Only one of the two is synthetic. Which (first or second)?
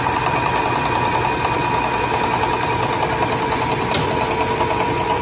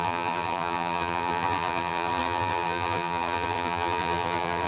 second